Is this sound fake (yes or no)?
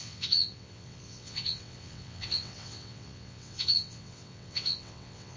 yes